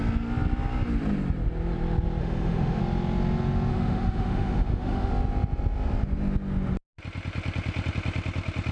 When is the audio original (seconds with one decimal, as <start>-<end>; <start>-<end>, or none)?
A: 0.0-2.2; 2.8-3.7; 5.1-8.7